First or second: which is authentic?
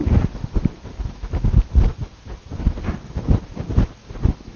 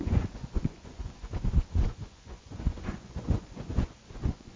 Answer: first